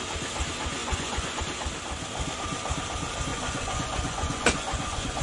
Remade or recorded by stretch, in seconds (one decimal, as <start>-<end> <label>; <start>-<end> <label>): 0.0-0.8 recorded; 0.8-1.4 remade; 1.4-3.3 recorded; 3.3-5.2 remade

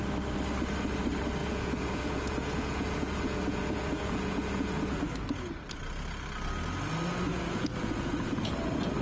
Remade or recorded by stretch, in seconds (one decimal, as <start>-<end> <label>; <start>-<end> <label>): 0.0-1.4 recorded; 1.4-5.0 remade; 5.0-7.3 recorded; 7.3-8.5 remade; 8.5-9.0 recorded

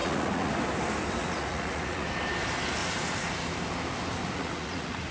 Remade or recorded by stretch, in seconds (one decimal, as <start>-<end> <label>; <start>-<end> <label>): 0.0-0.5 remade; 0.5-1.2 recorded; 1.2-2.1 remade; 2.1-2.8 recorded; 2.8-3.3 remade; 3.3-4.2 recorded; 4.2-5.1 remade